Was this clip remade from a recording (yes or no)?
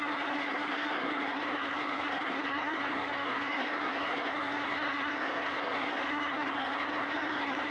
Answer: yes